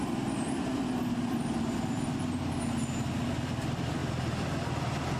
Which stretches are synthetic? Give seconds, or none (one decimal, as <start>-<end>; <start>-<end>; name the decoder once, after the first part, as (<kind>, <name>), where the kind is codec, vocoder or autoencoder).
0.0-0.8 (vocoder, BigVGAN v2); 3.0-4.0